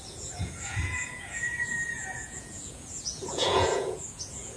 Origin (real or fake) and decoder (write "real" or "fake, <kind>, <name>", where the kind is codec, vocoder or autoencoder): fake, vocoder, Vocos